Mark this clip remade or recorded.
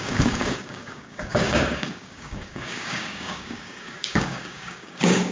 remade